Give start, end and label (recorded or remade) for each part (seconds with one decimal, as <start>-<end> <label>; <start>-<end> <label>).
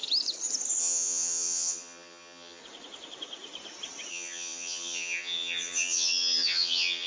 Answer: 0.0-0.8 recorded; 0.8-2.6 remade; 2.6-4.1 recorded; 4.1-7.1 remade